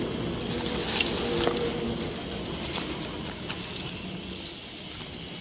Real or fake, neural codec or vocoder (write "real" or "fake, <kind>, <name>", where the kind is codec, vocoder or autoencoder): real